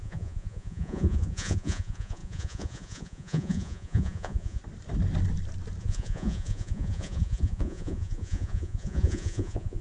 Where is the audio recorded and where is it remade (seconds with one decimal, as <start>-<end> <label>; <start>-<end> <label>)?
0.0-4.6 remade; 4.6-5.8 recorded; 5.8-9.8 remade